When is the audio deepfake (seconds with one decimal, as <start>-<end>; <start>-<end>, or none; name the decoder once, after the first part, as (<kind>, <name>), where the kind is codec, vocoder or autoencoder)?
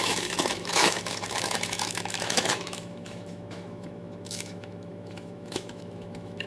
0.0-6.5 (autoencoder, DAC-VAE)